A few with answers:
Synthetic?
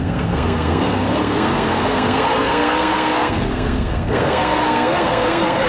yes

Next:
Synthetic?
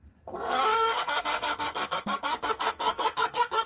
yes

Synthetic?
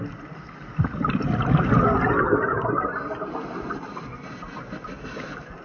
no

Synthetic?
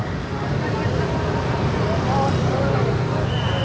no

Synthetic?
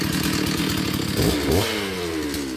no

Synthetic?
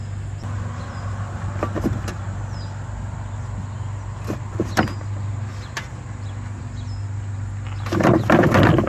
no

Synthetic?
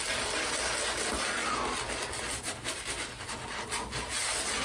no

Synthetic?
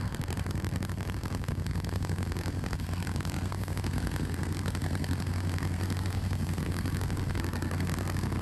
yes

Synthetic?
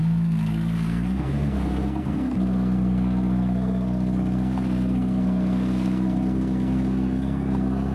yes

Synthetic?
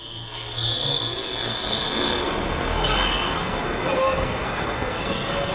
yes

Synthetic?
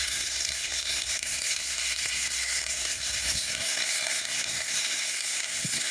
yes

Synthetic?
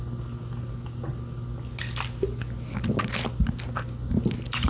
no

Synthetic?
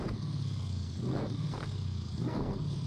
yes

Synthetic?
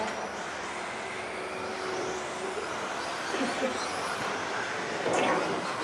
no